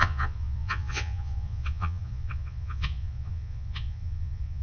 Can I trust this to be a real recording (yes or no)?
no